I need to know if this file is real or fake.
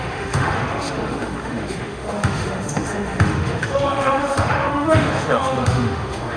fake